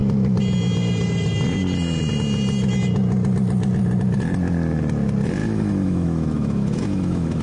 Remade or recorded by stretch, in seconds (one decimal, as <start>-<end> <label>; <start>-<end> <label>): 0.0-5.4 recorded; 5.4-7.4 remade